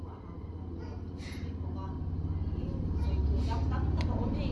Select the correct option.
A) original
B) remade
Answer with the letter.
A